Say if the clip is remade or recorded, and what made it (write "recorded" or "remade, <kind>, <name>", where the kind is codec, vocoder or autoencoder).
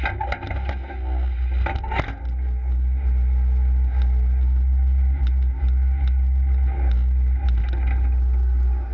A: recorded